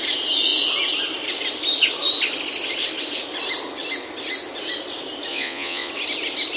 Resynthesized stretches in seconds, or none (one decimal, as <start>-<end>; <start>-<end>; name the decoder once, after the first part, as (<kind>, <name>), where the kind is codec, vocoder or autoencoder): 5.3-5.9 (vocoder, Vocos)